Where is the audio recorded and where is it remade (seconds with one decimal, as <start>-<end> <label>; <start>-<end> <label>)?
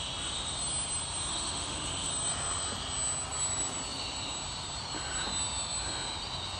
0.0-1.3 recorded; 1.3-2.1 remade; 2.1-6.6 recorded